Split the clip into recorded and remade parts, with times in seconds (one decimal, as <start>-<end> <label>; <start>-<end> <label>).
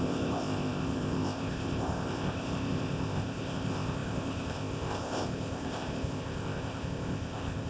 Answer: 0.0-7.7 remade